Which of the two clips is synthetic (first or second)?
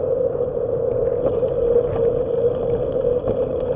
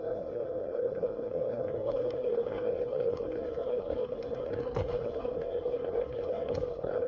second